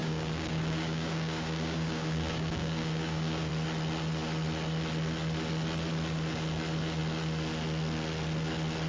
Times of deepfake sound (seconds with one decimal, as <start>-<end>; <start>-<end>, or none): 0.0-3.5